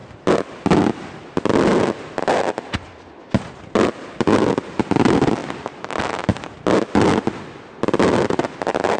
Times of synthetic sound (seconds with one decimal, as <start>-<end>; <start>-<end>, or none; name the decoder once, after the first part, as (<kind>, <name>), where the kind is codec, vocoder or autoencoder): none